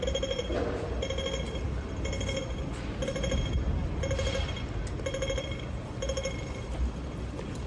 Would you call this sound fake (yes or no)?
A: no